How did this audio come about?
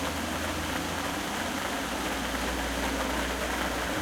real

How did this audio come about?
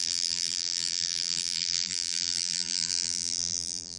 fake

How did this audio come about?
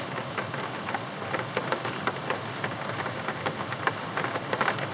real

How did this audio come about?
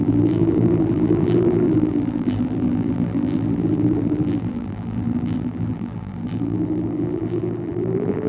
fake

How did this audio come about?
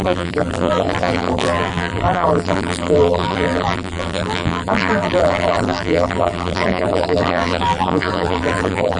fake